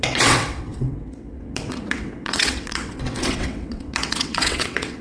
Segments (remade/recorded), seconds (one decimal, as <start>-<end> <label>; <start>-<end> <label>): 0.0-5.0 remade